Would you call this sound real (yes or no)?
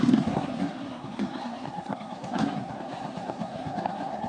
no